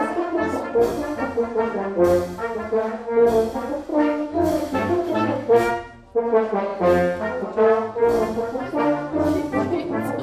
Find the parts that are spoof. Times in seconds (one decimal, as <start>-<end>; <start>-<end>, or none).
3.9-5.7